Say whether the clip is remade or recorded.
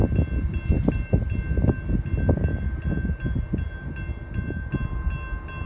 recorded